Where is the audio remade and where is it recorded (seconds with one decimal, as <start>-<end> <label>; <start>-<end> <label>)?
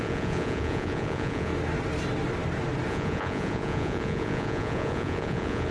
0.0-1.5 remade; 1.5-2.9 recorded; 2.9-5.7 remade